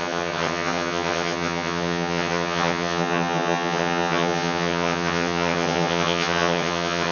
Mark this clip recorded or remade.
remade